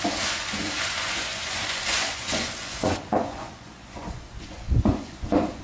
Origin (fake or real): fake